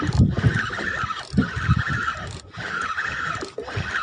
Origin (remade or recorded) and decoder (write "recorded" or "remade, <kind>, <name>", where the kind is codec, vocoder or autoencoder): recorded